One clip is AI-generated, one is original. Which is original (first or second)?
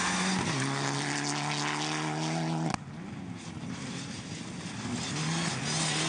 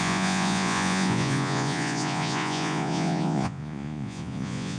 first